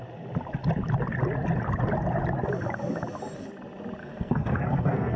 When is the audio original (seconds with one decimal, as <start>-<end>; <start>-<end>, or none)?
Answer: 0.0-4.0